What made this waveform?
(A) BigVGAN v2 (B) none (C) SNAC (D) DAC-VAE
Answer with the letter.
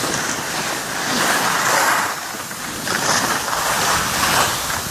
B